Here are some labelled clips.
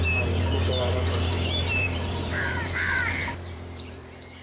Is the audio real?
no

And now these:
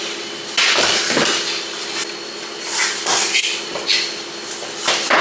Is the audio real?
yes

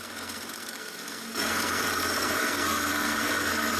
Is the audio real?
no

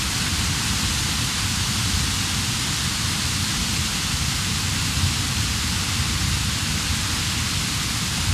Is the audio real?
no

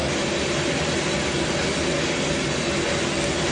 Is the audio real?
yes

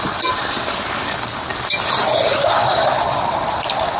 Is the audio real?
yes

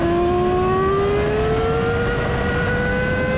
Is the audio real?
yes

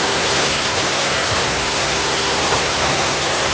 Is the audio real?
no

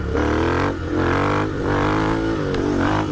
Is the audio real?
yes